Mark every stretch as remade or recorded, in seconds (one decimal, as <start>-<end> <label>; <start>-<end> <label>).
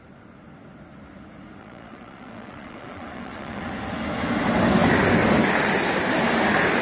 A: 0.0-1.6 recorded; 1.6-3.7 remade; 3.7-6.8 recorded